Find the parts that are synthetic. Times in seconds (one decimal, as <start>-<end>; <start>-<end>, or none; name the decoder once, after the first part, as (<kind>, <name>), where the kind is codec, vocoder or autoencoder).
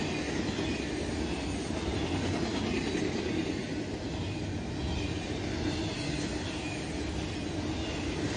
none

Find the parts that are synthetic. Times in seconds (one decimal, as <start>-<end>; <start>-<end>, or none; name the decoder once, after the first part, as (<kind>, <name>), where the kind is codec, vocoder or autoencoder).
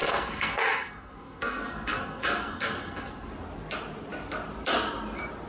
0.0-3.3 (codec, SNAC)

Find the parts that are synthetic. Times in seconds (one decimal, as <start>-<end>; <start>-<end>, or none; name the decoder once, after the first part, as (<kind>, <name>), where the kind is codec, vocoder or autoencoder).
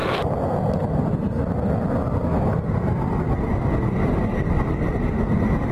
none